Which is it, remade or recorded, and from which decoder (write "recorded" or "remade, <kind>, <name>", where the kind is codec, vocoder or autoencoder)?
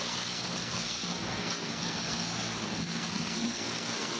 remade, codec, SNAC